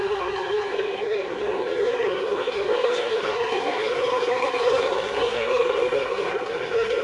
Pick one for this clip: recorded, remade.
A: remade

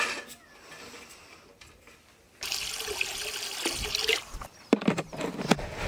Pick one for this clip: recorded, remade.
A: recorded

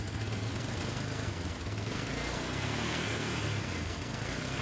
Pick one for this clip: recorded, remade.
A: remade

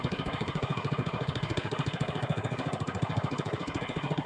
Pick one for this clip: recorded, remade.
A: remade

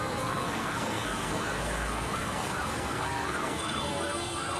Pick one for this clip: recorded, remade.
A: remade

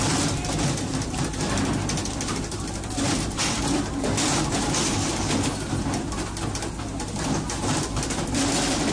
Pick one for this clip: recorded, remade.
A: recorded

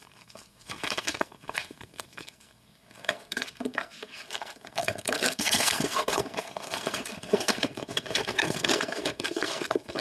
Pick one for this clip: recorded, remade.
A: remade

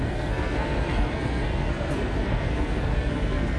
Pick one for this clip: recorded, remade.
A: remade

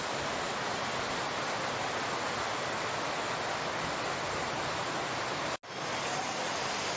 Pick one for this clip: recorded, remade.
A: recorded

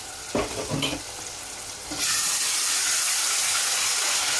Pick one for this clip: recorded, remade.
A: recorded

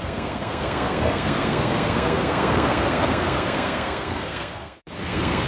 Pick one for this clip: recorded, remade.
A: remade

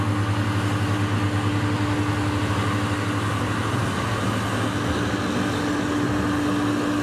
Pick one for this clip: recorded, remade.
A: recorded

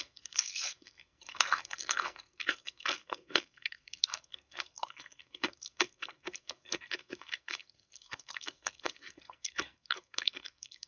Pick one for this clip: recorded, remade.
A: remade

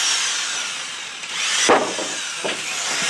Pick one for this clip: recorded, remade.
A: recorded